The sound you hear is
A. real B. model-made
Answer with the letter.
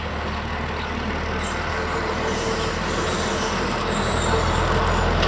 A